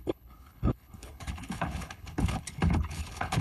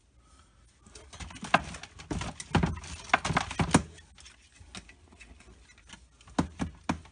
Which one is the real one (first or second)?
second